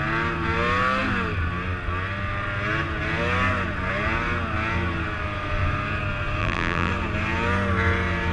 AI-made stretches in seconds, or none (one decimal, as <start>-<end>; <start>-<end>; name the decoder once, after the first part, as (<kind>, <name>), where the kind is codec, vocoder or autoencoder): 6.4-6.9 (vocoder, BigVGAN v2)